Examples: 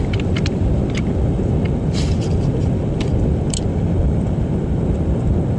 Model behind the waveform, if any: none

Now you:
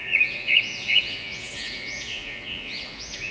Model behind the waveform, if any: vocoder, Vocos